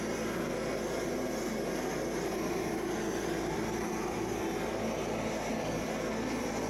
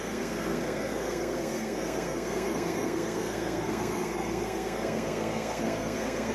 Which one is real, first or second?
first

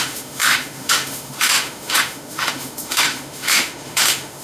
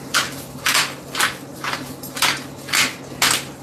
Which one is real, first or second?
second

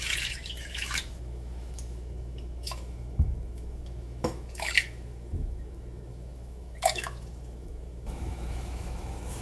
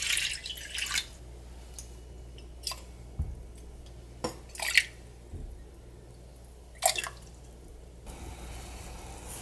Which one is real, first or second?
second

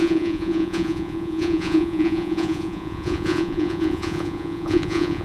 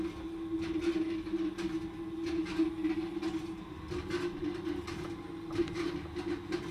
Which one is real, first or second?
second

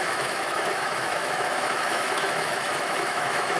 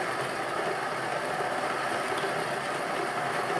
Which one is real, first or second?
second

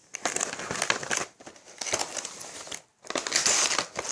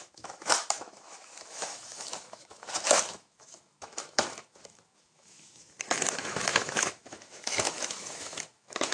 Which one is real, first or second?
first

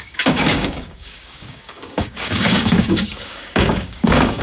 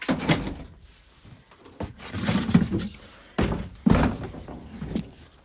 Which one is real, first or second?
second